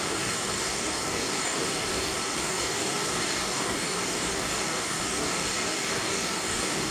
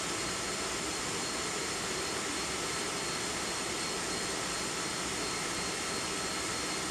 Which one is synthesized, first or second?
first